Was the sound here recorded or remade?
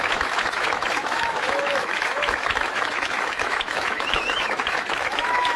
remade